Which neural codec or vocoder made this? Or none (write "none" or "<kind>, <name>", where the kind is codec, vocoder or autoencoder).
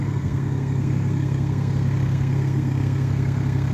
codec, SNAC